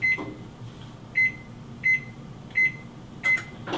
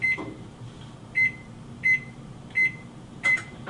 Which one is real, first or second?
first